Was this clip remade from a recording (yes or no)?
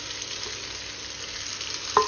no